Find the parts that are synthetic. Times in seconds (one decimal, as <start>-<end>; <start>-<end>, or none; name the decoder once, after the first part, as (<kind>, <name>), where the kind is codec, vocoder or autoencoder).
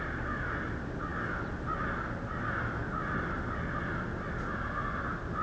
none